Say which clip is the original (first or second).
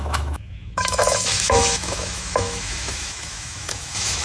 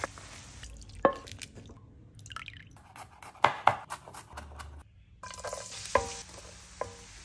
second